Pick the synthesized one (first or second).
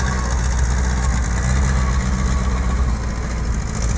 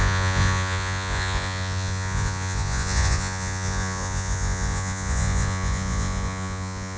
second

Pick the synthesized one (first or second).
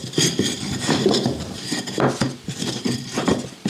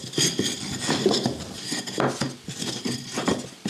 first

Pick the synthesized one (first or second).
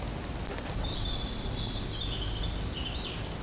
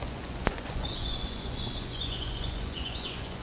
second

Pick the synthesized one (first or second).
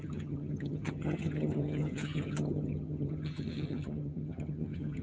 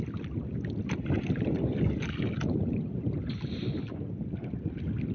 first